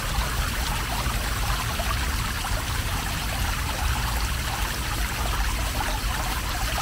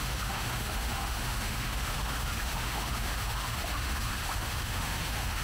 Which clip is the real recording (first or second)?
first